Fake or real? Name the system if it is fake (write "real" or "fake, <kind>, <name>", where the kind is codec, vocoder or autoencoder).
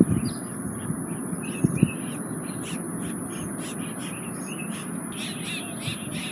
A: real